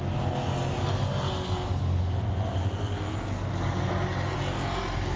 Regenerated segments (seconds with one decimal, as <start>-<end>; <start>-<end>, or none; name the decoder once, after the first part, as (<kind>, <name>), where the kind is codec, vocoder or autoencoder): none